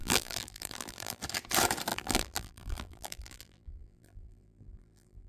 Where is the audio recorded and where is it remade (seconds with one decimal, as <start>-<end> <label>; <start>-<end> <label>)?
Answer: 0.0-1.2 remade; 1.2-1.9 recorded; 1.9-5.3 remade